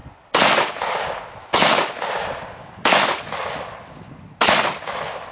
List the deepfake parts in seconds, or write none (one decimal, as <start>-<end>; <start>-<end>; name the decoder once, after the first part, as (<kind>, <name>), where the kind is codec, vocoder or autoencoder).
none